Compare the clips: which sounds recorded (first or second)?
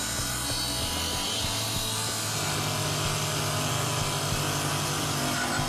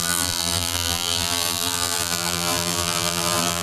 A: first